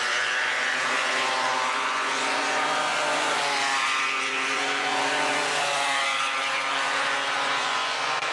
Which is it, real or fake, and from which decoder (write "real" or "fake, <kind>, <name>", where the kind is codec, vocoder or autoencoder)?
fake, vocoder, Vocos